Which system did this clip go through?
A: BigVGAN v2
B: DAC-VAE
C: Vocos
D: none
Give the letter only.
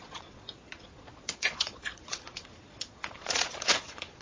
C